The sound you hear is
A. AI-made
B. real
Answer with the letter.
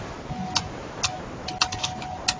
B